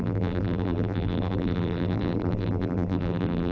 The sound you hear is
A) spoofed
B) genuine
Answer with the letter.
A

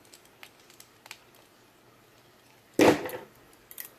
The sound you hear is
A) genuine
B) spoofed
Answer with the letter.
A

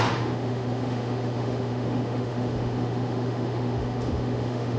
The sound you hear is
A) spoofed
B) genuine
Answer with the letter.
A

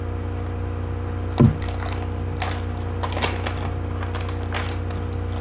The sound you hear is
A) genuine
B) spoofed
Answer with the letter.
A